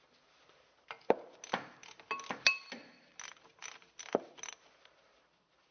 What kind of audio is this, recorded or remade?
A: recorded